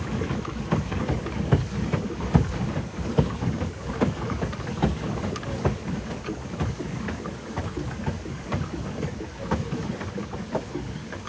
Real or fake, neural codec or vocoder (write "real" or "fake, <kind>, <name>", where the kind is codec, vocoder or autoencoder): fake, codec, DAC